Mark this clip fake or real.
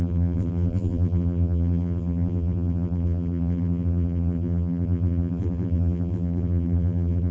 fake